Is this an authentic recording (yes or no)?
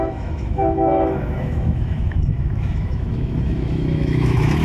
no